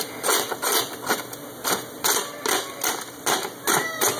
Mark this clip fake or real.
real